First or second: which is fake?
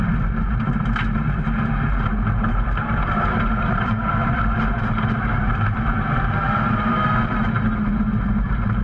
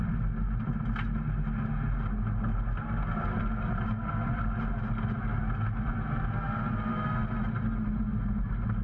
first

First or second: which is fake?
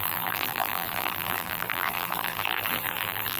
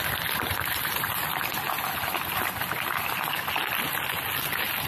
first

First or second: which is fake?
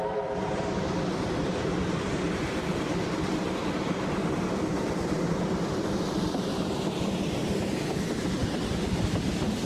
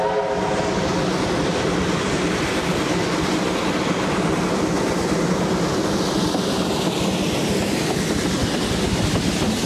first